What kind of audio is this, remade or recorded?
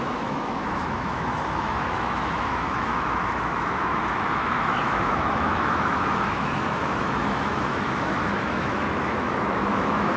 remade